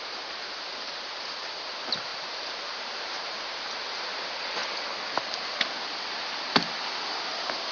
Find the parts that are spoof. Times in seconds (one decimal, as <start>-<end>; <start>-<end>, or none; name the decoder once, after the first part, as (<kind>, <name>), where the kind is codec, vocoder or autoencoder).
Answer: 2.1-4.0 (vocoder, BigVGAN v2)